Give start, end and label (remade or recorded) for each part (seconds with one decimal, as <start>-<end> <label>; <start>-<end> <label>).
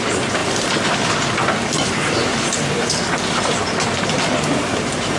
0.0-5.2 recorded